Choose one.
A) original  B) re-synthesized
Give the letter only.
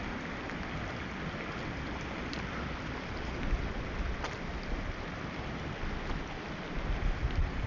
A